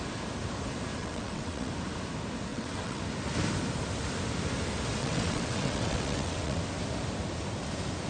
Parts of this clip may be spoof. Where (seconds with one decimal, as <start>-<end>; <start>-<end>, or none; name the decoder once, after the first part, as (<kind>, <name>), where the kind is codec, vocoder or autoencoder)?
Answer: 1.0-1.7 (vocoder, WaveNeXt); 2.5-3.0; 5.0-6.6